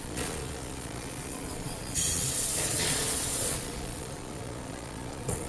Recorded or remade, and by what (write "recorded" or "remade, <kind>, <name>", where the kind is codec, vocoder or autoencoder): remade, vocoder, Vocos